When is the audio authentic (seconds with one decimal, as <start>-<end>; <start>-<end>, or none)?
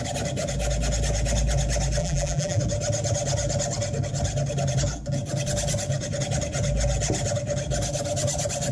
0.0-2.0; 2.6-8.7